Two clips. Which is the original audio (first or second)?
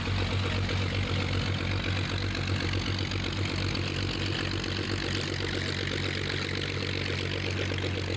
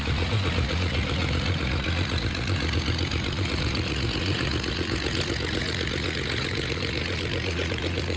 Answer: first